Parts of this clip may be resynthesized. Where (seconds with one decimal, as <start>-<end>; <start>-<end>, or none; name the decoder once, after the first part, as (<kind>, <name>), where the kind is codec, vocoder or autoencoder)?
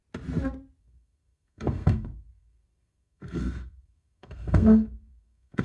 0.8-5.6 (codec, SNAC)